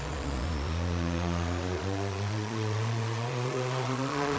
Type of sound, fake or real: fake